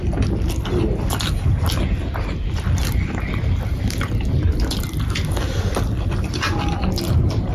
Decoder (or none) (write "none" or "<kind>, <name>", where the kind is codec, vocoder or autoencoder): none